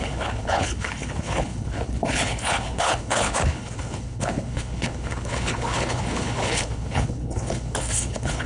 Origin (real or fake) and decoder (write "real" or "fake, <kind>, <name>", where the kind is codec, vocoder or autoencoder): fake, codec, HILCodec